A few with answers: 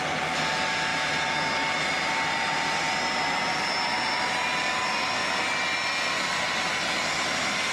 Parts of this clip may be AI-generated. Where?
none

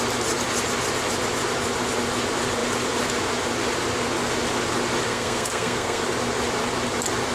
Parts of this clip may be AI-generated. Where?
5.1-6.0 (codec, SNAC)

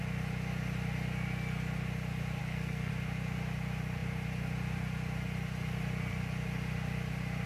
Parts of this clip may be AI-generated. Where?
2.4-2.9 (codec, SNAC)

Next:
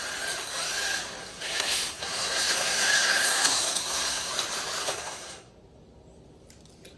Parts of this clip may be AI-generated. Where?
1.2-4.3 (codec, SNAC); 4.8-5.5

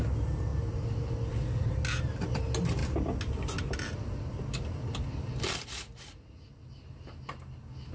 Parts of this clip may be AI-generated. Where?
none